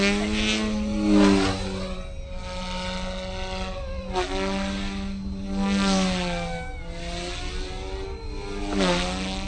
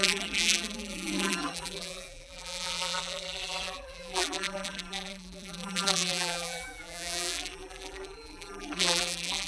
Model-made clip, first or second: second